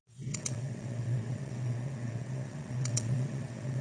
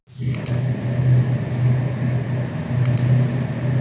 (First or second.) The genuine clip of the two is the second